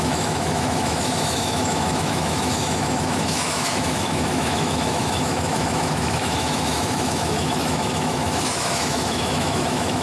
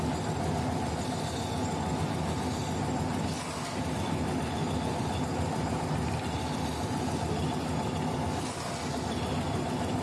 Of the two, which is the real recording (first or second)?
second